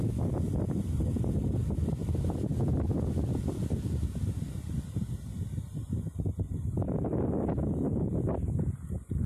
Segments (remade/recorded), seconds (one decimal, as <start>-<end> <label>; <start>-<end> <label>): 0.0-9.3 recorded